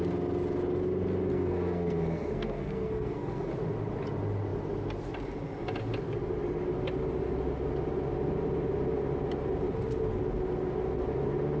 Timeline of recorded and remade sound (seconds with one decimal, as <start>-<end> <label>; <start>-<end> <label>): 0.0-1.3 recorded; 1.3-3.5 remade; 3.5-11.6 recorded